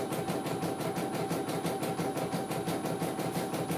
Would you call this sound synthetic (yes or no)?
no